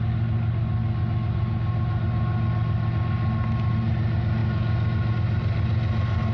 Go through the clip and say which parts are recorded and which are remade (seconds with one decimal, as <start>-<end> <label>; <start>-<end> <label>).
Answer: 0.0-6.3 recorded